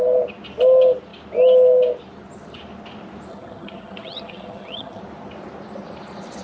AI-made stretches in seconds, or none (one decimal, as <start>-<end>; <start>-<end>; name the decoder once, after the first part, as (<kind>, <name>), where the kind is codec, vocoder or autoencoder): 3.3-5.0 (vocoder, HiFi-GAN)